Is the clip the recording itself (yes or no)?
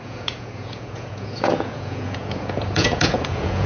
no